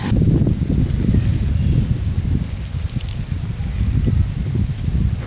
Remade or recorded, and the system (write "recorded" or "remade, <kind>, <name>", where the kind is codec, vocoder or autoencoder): recorded